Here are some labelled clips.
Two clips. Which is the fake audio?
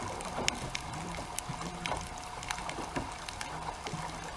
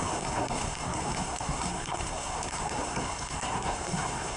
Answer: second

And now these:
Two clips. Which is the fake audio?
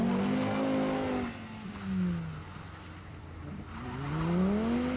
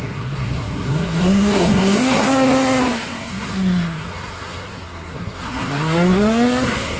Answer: second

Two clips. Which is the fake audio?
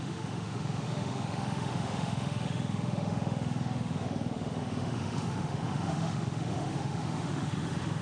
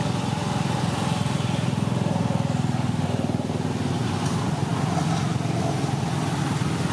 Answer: first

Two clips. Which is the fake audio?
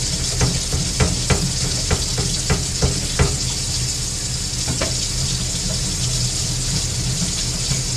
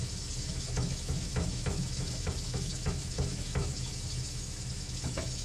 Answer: second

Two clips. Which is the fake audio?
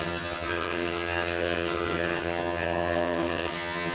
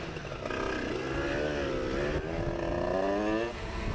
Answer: first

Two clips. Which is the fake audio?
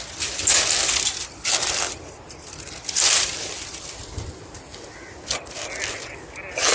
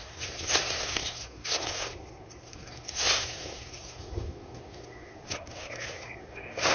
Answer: second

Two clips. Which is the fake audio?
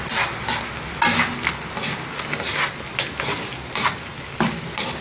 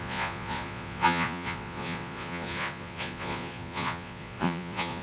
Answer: second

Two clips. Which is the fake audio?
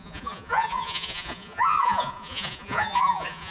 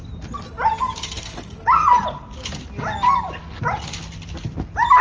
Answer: first